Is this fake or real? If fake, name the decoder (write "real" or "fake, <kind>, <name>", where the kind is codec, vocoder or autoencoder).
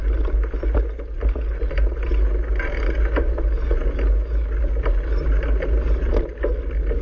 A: real